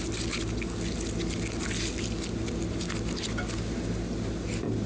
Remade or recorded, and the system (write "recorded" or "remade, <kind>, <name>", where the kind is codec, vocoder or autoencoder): recorded